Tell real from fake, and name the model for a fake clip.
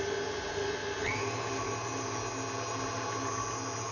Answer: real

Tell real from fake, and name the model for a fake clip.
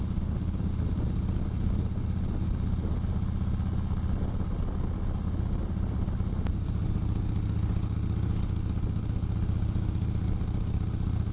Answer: real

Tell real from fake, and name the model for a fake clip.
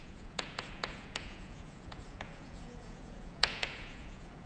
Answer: fake, vocoder, Vocos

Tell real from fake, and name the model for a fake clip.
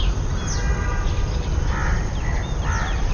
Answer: real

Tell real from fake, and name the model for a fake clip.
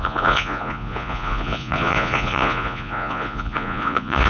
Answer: fake, vocoder, Vocos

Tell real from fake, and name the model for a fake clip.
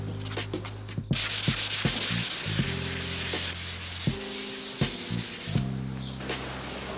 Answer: real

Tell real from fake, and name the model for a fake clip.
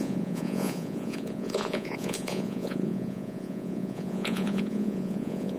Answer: fake, vocoder, Vocos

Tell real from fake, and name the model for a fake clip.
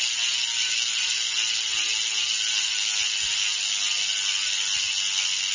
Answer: real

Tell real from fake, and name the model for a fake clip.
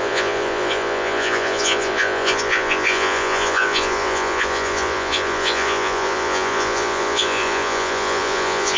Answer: fake, vocoder, Vocos